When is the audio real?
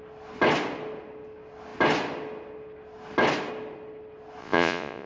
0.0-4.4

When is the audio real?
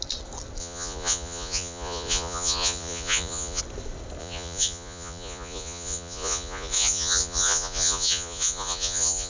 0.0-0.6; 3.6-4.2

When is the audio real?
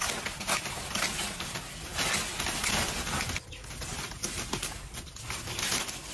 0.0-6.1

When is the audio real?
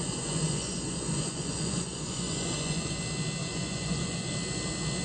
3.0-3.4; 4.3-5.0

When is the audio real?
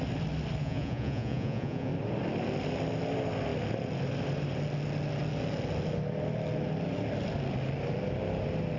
0.0-0.6; 1.9-8.8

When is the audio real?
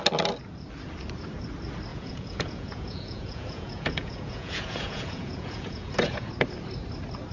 0.0-1.9; 6.3-7.3